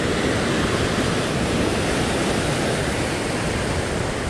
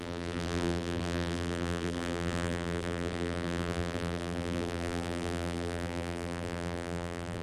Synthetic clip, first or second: second